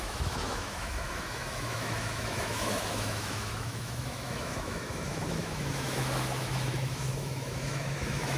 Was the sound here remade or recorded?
remade